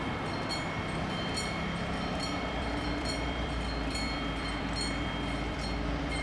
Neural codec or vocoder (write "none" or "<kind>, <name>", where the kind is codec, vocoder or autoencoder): vocoder, BigVGAN v2